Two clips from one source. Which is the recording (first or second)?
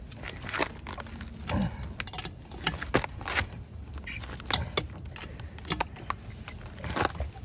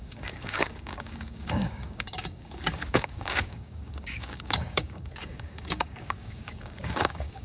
first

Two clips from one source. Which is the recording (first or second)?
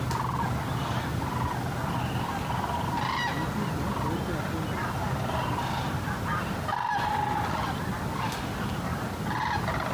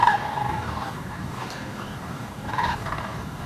first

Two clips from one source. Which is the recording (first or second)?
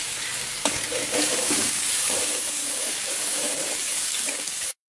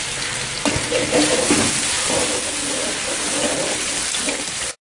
second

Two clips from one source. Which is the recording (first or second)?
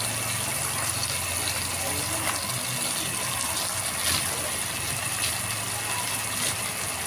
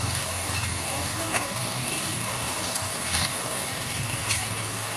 first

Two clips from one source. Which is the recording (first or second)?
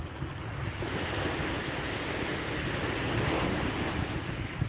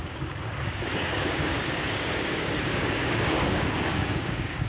first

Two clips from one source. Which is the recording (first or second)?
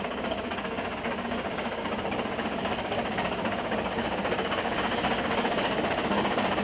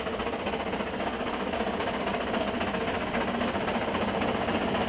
second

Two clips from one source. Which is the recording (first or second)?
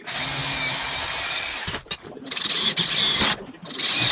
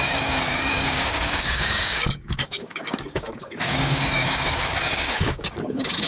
first